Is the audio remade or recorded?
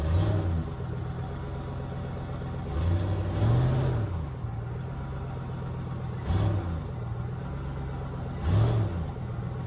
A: recorded